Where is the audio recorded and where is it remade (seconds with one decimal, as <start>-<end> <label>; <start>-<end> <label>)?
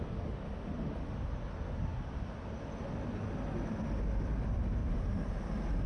0.0-4.8 recorded; 4.8-5.4 remade; 5.4-5.9 recorded